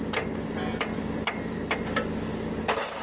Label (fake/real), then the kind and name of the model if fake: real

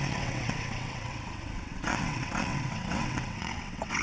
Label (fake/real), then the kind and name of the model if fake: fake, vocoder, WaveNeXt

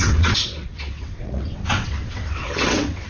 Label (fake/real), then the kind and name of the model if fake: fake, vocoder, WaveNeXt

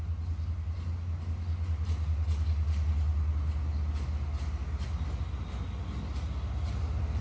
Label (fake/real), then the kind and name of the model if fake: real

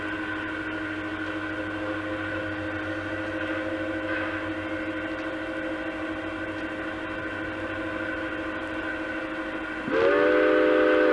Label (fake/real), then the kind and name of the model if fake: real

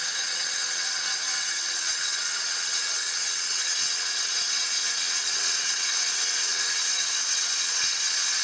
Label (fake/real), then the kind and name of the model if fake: fake, vocoder, WaveNeXt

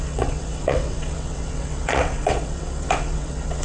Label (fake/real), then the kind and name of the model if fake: fake, vocoder, WaveNeXt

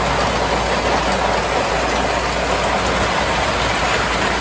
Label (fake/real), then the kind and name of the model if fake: real